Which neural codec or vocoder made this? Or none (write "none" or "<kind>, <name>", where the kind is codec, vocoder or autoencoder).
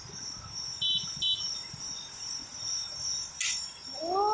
none